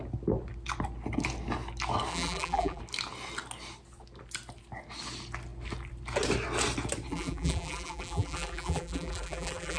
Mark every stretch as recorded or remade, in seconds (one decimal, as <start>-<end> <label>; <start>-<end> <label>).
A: 0.0-2.1 recorded; 2.1-2.8 remade; 2.8-7.1 recorded; 7.1-9.8 remade